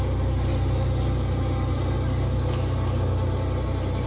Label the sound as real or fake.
real